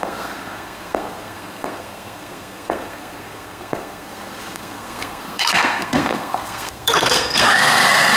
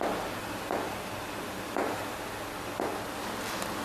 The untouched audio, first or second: second